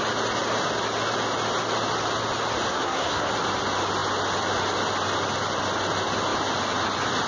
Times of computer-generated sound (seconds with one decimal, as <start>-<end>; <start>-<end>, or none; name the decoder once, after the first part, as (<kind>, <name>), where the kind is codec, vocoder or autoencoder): 2.7-3.3 (codec, SNAC)